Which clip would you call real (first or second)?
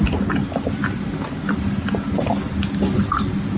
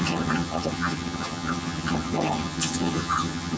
first